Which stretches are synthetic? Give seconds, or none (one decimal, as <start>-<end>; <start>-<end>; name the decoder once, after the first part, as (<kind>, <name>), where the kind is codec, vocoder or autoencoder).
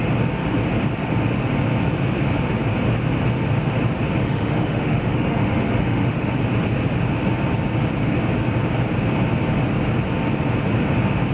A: 4.2-6.3 (autoencoder, DAC-VAE)